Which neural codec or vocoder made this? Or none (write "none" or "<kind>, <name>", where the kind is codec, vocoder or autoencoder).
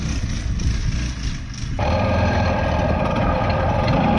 vocoder, BigVGAN v2